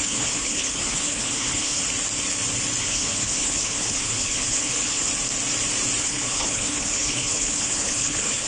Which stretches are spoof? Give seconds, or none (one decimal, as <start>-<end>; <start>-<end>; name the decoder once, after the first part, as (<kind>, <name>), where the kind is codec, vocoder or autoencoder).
0.0-1.8 (codec, HILCodec); 2.8-5.1; 6.0-8.5